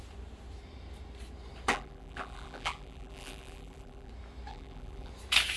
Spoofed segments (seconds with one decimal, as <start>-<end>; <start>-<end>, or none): 1.7-4.1; 4.5-5.1